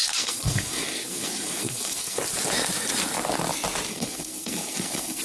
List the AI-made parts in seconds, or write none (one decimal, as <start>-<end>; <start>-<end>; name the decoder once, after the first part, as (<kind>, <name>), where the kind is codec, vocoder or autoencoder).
0.0-2.2 (codec, SNAC); 3.9-5.2